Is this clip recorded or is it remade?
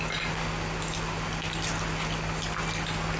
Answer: recorded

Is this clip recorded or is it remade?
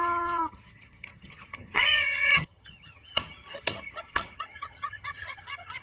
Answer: remade